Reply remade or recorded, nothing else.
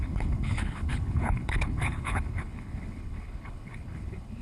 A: remade